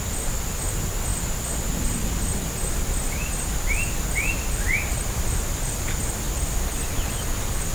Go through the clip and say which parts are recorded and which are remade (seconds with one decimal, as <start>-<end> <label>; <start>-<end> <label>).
0.0-7.7 recorded